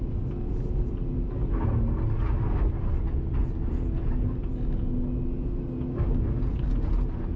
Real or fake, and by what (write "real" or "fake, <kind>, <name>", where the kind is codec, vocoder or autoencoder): real